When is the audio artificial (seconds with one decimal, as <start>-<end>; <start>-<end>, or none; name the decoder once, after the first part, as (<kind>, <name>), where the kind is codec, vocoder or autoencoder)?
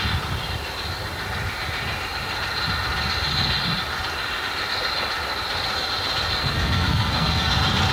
6.4-7.5 (codec, SNAC)